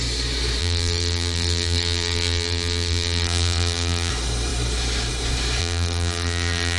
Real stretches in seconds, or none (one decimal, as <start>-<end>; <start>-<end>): 0.0-0.6; 4.1-5.6